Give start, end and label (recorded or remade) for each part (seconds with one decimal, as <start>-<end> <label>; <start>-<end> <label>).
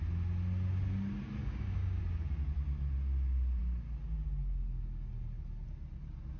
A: 0.0-1.4 recorded; 1.4-2.0 remade; 2.0-6.4 recorded